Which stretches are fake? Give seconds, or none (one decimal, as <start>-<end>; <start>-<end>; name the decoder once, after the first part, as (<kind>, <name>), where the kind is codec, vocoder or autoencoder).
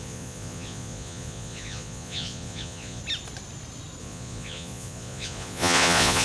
0.0-3.0 (vocoder, Vocos); 4.0-6.2